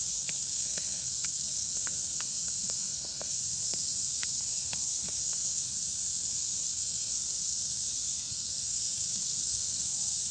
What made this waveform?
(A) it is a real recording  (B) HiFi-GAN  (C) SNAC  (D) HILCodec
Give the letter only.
C